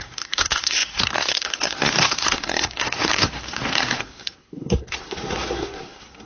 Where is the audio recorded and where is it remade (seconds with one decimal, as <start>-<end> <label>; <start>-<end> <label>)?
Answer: 0.0-6.3 remade